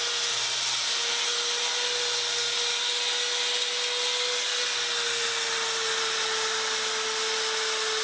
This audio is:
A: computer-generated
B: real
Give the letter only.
B